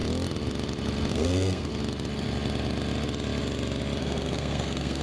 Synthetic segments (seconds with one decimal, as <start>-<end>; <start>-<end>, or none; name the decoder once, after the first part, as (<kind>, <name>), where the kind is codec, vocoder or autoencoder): 1.1-1.7 (codec, SNAC); 4.0-5.0